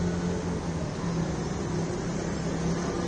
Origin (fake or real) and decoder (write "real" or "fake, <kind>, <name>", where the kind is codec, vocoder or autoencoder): real